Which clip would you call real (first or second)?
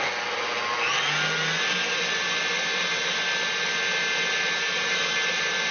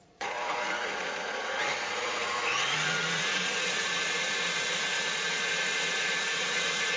first